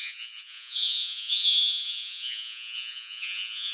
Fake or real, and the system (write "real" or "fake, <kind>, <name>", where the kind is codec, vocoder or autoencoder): fake, vocoder, Vocos